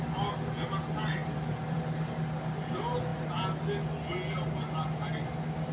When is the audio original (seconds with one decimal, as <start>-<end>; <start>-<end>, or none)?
0.0-1.2; 1.8-5.7